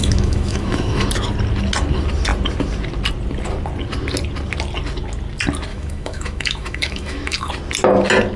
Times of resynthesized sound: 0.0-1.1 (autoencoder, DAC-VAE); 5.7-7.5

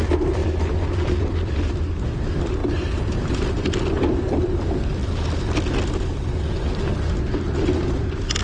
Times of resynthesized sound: 0.0-5.0 (vocoder, BigVGAN v2)

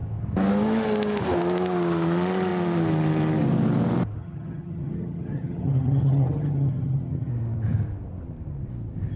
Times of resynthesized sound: 4.2-7.3 (vocoder, HiFi-GAN)

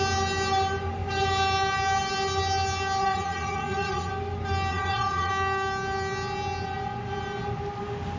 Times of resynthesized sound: 3.0-4.1 (vocoder, Vocos); 4.7-5.3